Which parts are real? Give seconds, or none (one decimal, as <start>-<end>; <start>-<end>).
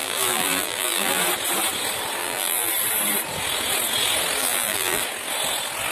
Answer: 1.2-2.2; 2.7-4.4; 5.0-5.9